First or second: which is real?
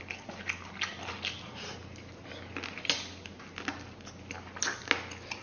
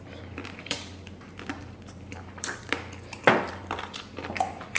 first